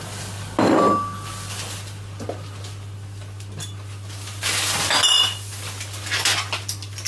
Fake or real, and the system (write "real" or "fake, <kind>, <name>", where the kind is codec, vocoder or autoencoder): real